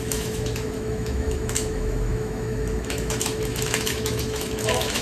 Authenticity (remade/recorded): remade